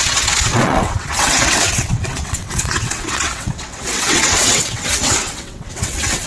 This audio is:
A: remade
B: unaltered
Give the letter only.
A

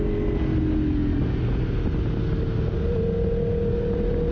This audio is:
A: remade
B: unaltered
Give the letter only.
B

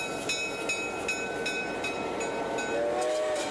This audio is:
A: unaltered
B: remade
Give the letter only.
A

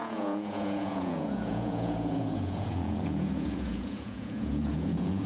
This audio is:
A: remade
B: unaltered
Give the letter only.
A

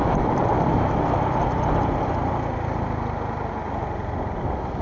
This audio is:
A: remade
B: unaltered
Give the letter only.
B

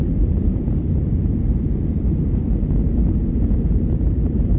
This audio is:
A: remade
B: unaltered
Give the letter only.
A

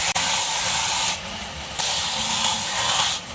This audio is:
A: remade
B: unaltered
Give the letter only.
B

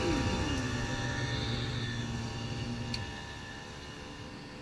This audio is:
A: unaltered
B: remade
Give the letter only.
A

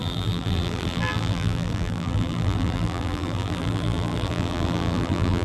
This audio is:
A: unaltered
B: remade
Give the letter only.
B